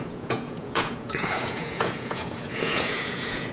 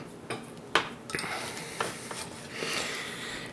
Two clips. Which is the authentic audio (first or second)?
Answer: second